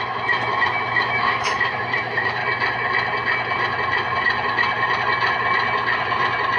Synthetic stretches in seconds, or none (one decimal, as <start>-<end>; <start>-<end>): 0.0-2.4